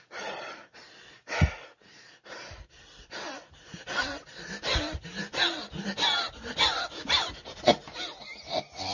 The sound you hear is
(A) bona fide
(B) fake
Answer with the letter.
A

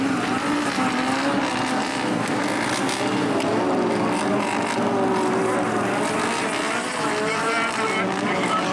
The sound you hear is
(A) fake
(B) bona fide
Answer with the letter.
B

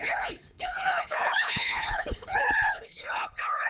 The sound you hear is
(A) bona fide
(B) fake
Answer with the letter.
B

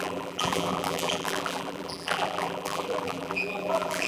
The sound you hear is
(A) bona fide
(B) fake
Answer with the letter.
B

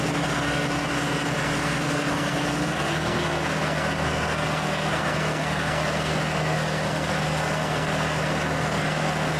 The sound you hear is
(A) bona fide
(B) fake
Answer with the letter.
B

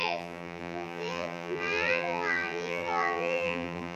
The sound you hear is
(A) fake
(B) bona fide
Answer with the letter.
A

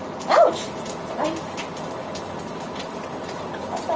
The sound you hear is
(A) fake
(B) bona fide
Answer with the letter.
B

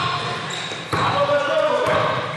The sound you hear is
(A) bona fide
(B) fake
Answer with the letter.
A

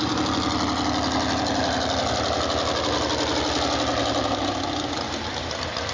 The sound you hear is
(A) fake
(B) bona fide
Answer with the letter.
B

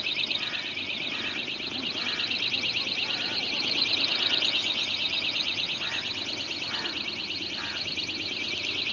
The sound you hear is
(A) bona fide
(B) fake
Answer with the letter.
A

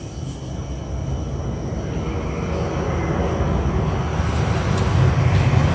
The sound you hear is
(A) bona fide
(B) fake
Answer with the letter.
A